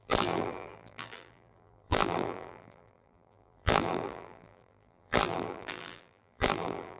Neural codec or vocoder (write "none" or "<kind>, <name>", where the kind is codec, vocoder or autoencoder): vocoder, BigVGAN v2